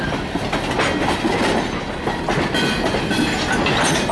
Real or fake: real